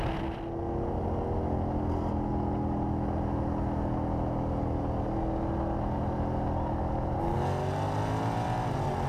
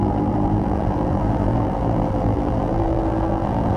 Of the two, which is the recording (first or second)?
first